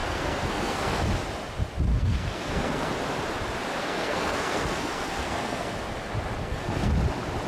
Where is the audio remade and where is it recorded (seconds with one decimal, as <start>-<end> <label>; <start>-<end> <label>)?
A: 0.0-1.1 remade; 1.1-1.9 recorded; 1.9-2.9 remade; 2.9-3.8 recorded; 3.8-5.7 remade; 5.7-6.4 recorded; 6.4-6.9 remade; 6.9-7.5 recorded